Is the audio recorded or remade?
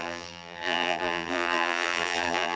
remade